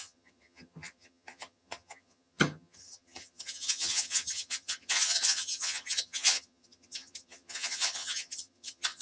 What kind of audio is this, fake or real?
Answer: fake